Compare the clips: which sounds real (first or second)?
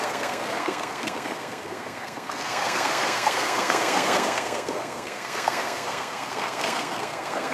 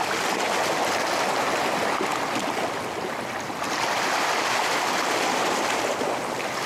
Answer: second